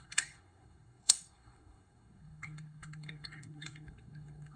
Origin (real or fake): fake